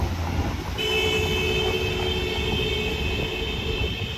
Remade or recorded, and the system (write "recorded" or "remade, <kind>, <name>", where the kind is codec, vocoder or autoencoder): recorded